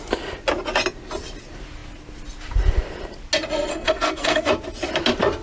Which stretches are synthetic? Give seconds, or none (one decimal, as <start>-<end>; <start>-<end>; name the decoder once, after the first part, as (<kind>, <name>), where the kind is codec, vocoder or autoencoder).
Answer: 3.7-4.5 (codec, SNAC)

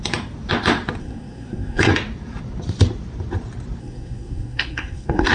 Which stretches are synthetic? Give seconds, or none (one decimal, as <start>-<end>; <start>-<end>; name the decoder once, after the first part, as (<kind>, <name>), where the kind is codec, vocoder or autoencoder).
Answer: 1.0-1.9 (codec, SNAC); 3.8-5.3